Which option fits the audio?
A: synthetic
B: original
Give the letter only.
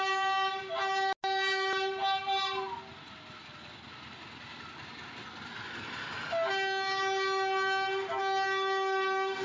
B